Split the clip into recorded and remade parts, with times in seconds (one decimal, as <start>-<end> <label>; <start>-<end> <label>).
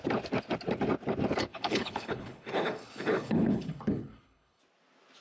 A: 0.0-1.5 recorded; 1.5-4.6 remade; 4.6-5.2 recorded